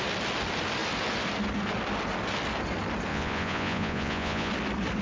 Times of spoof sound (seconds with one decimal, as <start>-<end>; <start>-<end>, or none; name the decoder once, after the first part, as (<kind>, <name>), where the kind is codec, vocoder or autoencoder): 3.1-4.5 (vocoder, Vocos)